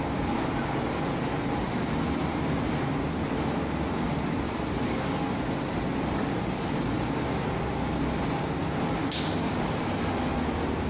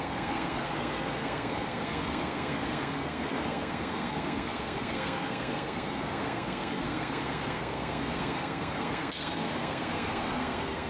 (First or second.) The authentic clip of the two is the first